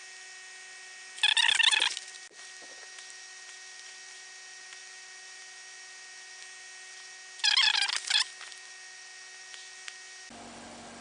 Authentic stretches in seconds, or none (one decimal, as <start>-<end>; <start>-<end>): 0.0-11.0